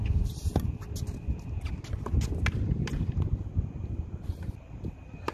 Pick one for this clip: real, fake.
real